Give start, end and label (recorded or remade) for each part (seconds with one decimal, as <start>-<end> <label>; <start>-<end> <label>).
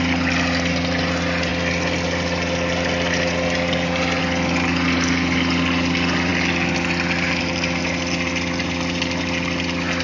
0.0-10.0 recorded